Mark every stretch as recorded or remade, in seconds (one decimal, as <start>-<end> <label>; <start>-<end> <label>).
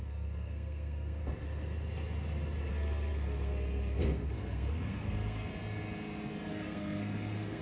0.0-1.2 remade; 1.2-2.7 recorded; 2.7-5.5 remade; 5.5-6.5 recorded; 6.5-7.6 remade